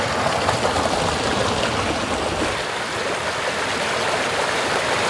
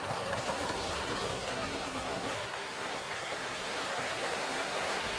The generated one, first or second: second